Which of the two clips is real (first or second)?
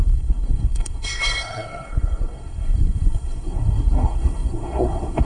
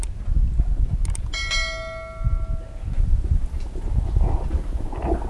second